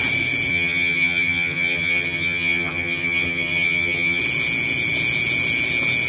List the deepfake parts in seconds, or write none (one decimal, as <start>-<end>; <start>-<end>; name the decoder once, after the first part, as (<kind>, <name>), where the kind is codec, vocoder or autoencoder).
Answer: 0.5-4.2 (vocoder, HiFi-GAN)

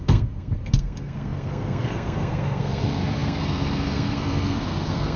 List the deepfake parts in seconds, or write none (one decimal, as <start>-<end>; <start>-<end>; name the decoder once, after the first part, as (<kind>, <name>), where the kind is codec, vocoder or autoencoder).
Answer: 0.0-5.2 (codec, SNAC)

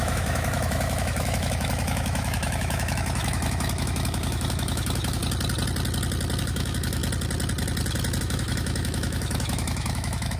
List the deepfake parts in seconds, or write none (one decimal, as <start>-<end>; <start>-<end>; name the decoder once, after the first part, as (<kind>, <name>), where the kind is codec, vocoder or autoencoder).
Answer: 0.0-5.2 (autoencoder, DAC-VAE); 6.4-7.0; 8.2-10.4

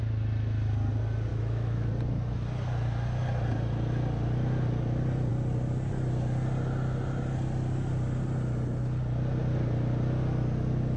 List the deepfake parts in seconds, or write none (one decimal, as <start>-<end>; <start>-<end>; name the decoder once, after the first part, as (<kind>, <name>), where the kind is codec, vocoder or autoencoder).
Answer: 1.3-1.9 (autoencoder, DAC-VAE)

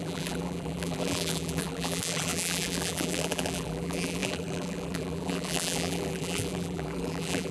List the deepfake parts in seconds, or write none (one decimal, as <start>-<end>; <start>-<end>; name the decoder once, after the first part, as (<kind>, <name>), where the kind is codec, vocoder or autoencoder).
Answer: 0.0-7.5 (vocoder, BigVGAN v2)

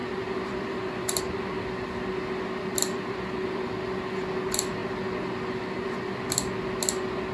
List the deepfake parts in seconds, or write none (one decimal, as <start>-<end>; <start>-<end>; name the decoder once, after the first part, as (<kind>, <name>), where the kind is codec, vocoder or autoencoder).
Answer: 0.0-1.2 (vocoder, BigVGAN v2)

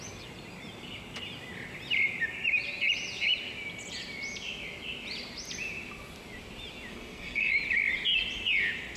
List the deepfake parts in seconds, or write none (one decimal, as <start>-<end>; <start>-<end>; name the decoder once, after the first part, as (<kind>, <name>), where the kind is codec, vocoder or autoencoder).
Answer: 6.9-7.5 (codec, SNAC)